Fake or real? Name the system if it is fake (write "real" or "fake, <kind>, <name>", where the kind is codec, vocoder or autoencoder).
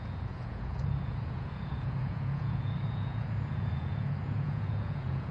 fake, vocoder, Vocos